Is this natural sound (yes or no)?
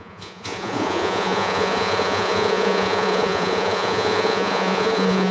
no